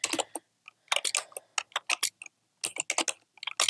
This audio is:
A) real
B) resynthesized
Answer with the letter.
A